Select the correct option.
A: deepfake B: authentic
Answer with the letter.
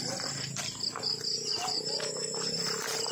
B